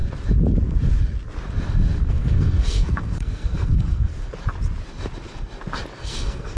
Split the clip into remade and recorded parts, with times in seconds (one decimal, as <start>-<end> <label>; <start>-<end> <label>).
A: 0.0-2.1 recorded; 2.1-4.1 remade; 4.1-6.0 recorded; 6.0-6.6 remade